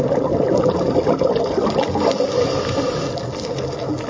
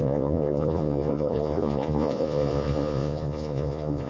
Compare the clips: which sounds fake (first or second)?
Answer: second